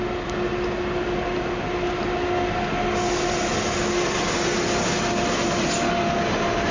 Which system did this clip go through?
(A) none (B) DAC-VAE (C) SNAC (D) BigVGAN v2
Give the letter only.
A